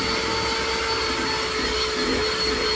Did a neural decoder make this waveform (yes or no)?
no